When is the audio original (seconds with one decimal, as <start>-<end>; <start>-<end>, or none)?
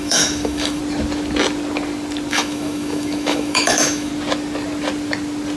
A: 0.8-2.3; 4.1-5.6